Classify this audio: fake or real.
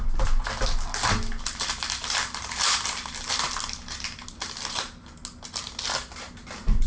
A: real